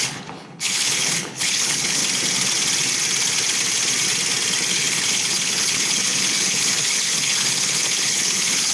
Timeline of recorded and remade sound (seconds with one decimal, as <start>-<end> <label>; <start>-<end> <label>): 0.0-2.0 remade; 2.0-4.7 recorded; 4.7-8.7 remade